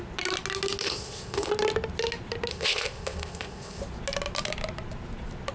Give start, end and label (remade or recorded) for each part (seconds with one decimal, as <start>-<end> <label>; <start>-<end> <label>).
0.0-0.8 recorded; 0.8-1.5 remade; 1.5-2.5 recorded; 2.5-3.8 remade; 3.8-5.5 recorded